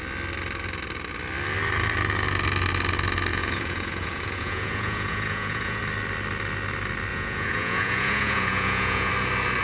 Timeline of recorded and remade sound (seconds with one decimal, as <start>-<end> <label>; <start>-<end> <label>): 0.0-3.3 recorded; 3.3-5.8 remade; 5.8-7.1 recorded; 7.1-9.1 remade; 9.1-9.6 recorded